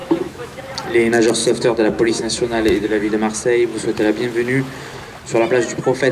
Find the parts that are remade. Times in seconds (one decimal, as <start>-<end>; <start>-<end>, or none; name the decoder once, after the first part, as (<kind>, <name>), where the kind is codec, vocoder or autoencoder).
0.0-0.6 (autoencoder, DAC-VAE); 1.4-3.1